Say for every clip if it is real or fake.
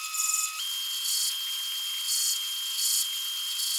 real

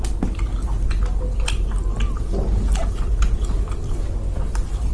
real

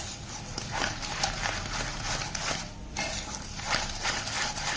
real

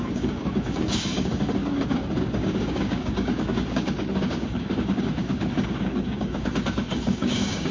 fake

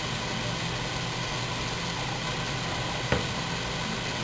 real